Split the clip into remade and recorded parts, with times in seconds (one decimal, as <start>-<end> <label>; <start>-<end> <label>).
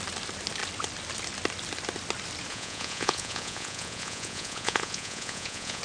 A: 0.0-2.5 recorded; 2.5-5.8 remade